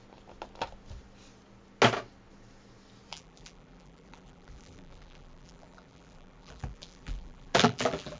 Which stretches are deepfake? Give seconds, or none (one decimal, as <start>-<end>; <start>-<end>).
3.1-8.2